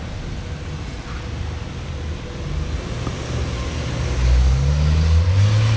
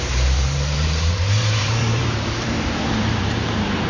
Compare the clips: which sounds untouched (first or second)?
first